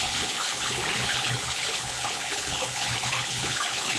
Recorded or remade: remade